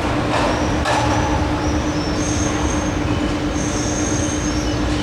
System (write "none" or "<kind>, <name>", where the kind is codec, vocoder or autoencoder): none